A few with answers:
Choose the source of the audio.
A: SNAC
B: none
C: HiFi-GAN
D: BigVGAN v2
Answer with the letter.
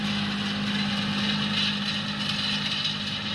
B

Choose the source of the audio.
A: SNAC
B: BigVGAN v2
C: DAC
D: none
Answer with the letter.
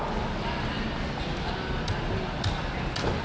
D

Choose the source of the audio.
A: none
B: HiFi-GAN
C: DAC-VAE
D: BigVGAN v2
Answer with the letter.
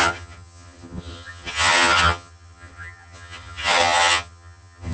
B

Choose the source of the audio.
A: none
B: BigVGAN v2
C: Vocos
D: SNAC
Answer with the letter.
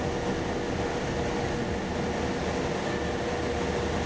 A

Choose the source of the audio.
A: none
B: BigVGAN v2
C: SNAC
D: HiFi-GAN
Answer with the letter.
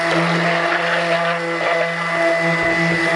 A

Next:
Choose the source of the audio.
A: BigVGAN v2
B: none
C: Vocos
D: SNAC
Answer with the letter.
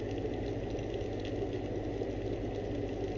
B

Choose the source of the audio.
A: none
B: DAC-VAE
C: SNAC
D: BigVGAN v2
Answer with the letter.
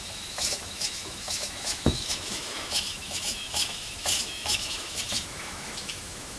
B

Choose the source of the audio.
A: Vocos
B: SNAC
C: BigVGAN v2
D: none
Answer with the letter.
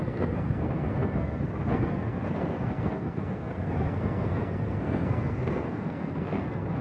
B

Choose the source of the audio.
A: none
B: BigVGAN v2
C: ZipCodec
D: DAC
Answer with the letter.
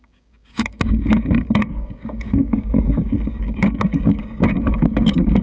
D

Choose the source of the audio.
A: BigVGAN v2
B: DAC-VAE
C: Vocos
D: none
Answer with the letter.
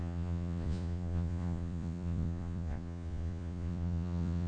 C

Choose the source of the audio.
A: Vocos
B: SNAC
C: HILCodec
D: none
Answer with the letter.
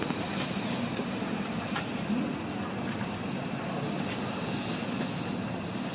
D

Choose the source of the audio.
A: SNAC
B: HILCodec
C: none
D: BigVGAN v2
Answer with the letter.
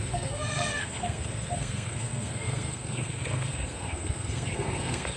A